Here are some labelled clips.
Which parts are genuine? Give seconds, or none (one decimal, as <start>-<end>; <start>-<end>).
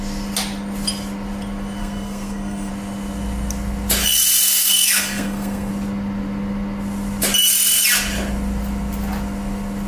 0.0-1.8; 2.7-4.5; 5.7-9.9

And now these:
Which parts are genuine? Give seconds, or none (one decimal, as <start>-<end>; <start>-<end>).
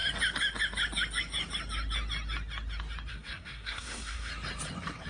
0.0-3.1; 4.3-5.1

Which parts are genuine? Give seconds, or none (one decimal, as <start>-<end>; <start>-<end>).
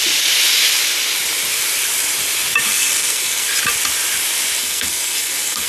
0.0-2.7; 3.5-4.6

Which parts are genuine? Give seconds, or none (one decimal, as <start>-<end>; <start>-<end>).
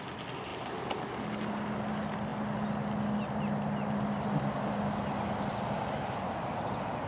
0.0-7.1